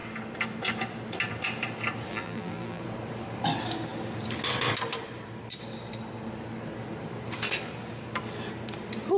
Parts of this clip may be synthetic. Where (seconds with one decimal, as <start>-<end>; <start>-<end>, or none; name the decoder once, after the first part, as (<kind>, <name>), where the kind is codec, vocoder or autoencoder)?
2.1-2.8 (vocoder, BigVGAN v2)